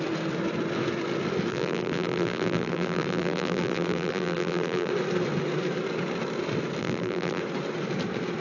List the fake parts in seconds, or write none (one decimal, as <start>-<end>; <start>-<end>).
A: 1.5-4.9; 6.8-7.4